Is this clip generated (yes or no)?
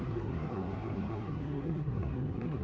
yes